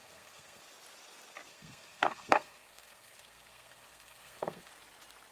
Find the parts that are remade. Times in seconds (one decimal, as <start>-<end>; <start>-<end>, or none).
0.0-0.6; 1.5-4.7